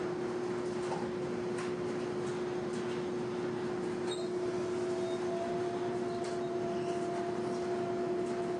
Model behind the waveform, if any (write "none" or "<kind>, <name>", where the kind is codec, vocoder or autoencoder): none